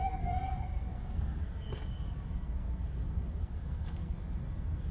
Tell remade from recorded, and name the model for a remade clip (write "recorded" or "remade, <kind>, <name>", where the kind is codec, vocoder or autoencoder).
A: remade, codec, SNAC